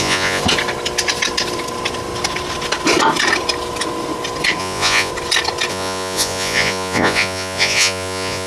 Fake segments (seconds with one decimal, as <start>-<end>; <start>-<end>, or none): 0.0-0.4; 4.6-5.1; 5.7-8.5